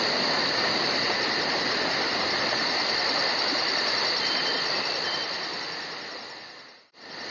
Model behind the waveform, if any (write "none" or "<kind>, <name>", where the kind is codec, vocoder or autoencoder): none